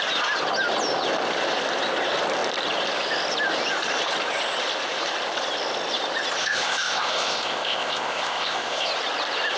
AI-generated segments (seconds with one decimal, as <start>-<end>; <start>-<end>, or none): 6.4-8.9